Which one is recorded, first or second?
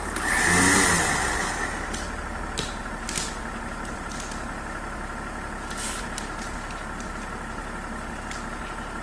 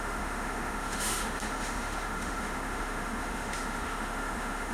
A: first